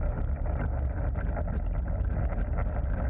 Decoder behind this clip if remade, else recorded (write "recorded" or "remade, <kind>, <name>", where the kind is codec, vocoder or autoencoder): recorded